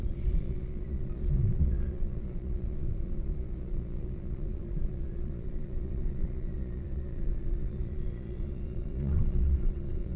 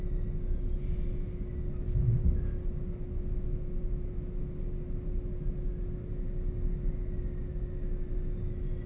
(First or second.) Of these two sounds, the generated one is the first